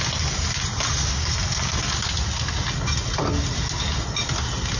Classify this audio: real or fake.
real